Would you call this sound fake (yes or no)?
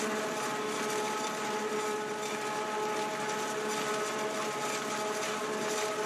no